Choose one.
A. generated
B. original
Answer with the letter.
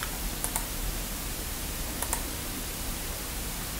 A